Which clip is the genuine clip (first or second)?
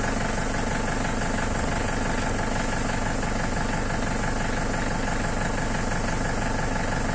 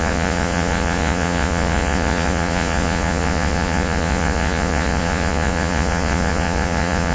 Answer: first